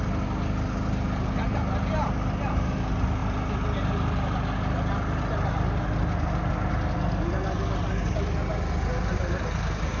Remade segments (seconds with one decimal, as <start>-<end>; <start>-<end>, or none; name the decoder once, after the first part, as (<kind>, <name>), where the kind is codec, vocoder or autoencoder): none